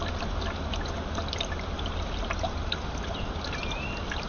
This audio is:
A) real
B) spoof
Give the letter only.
A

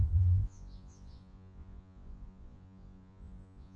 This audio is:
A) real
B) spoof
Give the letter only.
B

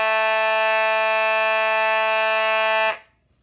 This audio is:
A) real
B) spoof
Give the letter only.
A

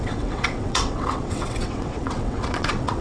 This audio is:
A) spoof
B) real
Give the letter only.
A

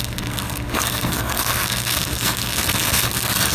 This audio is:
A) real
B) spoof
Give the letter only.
B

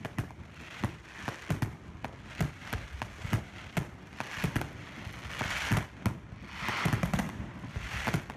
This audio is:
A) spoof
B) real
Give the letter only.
B